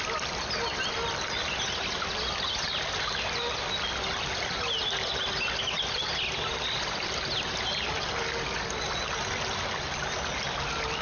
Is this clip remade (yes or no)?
no